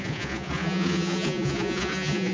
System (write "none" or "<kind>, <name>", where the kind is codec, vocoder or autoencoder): vocoder, Vocos